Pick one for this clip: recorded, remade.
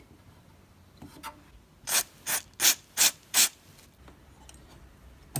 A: recorded